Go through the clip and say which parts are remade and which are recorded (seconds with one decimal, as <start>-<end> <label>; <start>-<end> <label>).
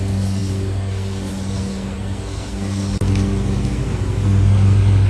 0.0-5.1 remade